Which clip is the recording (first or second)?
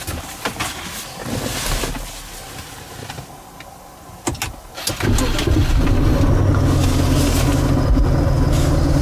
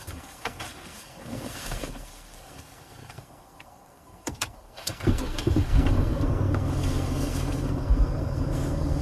first